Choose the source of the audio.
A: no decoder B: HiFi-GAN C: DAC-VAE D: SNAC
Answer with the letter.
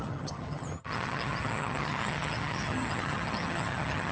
B